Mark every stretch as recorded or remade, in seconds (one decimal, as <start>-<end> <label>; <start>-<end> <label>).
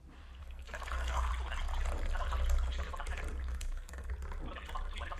0.0-0.4 recorded; 0.4-1.3 remade; 1.3-3.4 recorded; 3.4-4.1 remade; 4.1-5.2 recorded